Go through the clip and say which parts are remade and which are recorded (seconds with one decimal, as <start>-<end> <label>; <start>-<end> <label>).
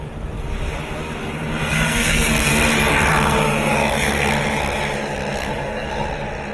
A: 0.0-1.6 recorded; 1.6-2.5 remade; 2.5-3.1 recorded; 3.1-4.3 remade; 4.3-5.4 recorded; 5.4-5.9 remade; 5.9-6.5 recorded